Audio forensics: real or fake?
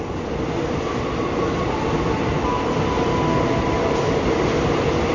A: real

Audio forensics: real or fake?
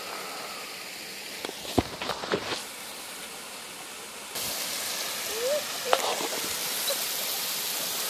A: real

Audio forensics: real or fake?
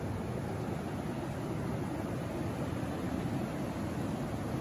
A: real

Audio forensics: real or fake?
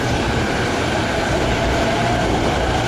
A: fake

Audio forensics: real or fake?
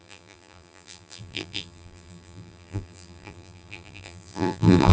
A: fake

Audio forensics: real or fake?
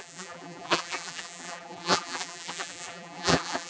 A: fake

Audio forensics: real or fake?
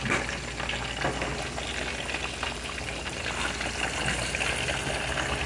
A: real